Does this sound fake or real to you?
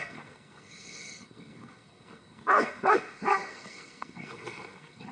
fake